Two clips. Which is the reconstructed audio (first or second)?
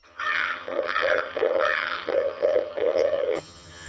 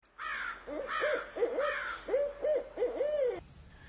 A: first